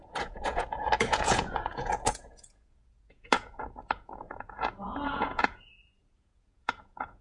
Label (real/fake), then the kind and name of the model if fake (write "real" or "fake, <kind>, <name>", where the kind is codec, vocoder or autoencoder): fake, vocoder, Vocos